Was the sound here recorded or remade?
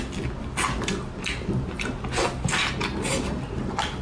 recorded